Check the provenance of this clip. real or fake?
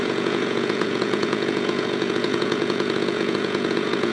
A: fake